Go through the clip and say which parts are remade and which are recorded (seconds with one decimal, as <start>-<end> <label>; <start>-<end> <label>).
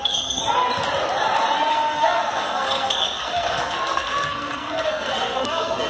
0.0-0.4 remade; 0.4-1.7 recorded; 1.7-5.9 remade